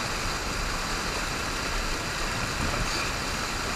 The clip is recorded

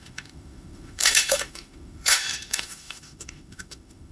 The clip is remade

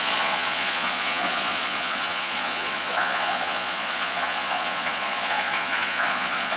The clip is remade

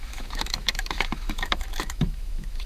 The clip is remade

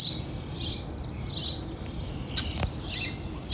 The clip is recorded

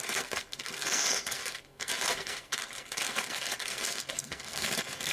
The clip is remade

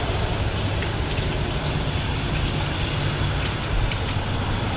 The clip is recorded